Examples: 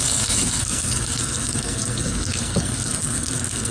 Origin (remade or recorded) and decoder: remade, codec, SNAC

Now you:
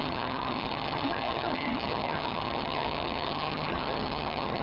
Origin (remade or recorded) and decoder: remade, vocoder, HiFi-GAN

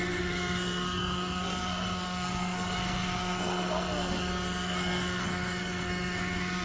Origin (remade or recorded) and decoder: remade, codec, SNAC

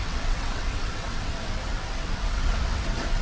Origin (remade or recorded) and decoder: remade, vocoder, WaveNeXt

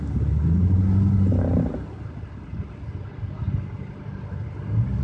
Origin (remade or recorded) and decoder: recorded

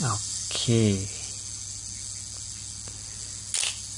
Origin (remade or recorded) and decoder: recorded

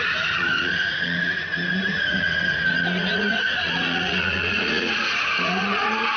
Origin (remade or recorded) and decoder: remade, vocoder, Vocos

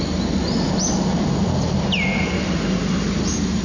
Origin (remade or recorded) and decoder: recorded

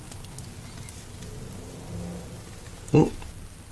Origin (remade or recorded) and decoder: recorded